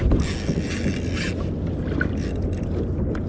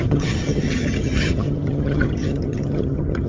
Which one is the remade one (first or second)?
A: second